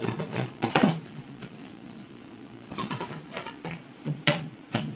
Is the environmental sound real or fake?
fake